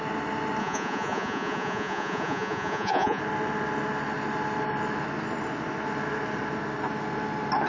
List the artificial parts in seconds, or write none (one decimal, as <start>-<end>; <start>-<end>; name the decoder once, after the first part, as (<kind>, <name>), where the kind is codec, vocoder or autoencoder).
0.6-3.2 (vocoder, Vocos)